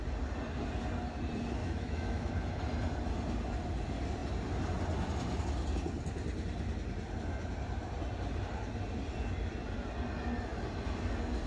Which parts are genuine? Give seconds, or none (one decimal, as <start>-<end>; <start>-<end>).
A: 0.0-1.6; 2.3-11.5